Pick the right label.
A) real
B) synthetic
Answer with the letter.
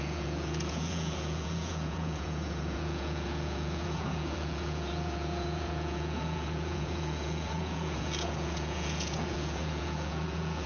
B